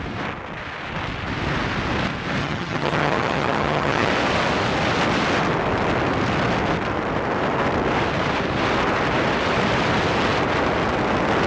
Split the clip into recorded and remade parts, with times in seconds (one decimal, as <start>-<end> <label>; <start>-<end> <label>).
0.0-2.4 recorded; 2.4-4.1 remade; 4.1-11.5 recorded